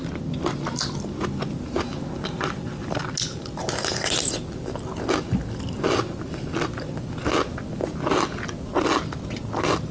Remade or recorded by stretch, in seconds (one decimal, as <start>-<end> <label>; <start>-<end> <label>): 0.0-9.9 recorded